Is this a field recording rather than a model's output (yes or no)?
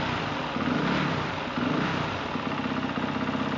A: yes